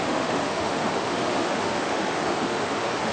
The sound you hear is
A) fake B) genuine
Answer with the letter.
A